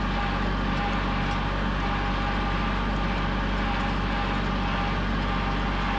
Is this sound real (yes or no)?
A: yes